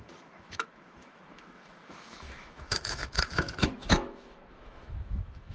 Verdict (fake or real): fake